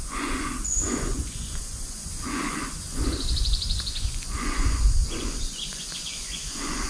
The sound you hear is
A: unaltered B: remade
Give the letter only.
B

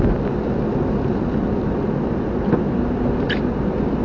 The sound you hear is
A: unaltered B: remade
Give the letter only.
A